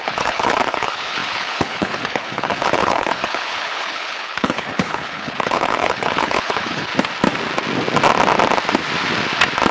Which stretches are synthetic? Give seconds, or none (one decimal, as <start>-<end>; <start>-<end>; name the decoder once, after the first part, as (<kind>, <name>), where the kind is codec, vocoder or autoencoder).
0.0-6.9 (codec, HILCodec)